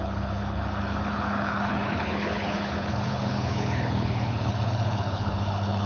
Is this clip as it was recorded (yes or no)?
no